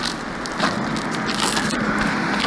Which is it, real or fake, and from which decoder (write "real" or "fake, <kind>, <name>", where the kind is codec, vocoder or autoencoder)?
real